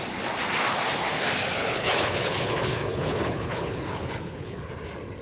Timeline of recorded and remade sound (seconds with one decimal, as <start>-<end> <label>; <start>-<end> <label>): 0.0-1.6 recorded; 1.6-4.7 remade; 4.7-5.2 recorded